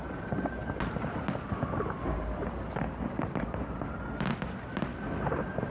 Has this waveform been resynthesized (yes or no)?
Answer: no